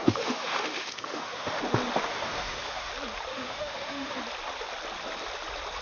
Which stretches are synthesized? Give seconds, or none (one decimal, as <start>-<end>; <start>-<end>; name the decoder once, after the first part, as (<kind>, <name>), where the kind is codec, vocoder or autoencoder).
0.0-1.6 (autoencoder, DAC-VAE); 2.1-2.9; 3.3-4.2